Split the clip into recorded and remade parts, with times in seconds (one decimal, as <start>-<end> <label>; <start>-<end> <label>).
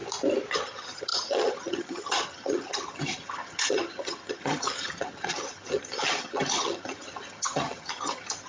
0.0-0.5 recorded; 0.5-8.5 remade